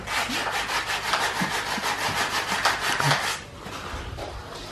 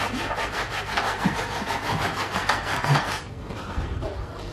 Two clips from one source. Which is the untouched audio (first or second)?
first